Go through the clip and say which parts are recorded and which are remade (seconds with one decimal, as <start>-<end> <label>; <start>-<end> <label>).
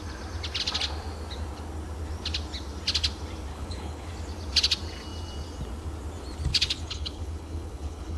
0.0-3.5 recorded; 3.5-4.1 remade; 4.1-6.5 recorded; 6.5-8.2 remade